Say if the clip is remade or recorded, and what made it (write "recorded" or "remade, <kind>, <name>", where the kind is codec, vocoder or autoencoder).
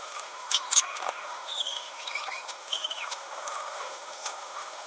remade, autoencoder, DAC-VAE